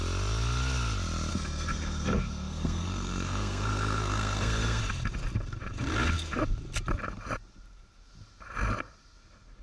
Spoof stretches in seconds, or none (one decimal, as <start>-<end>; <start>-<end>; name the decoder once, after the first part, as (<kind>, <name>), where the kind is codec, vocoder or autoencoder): 1.3-4.8 (codec, SNAC)

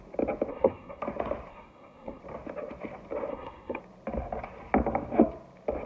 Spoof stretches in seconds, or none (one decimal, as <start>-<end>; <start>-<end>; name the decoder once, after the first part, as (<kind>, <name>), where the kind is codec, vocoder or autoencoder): 0.5-1.0 (codec, SNAC); 1.5-2.2; 3.3-3.8